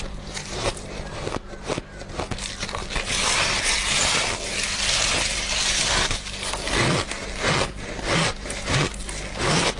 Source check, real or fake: real